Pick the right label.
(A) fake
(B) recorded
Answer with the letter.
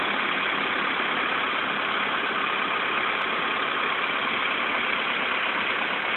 B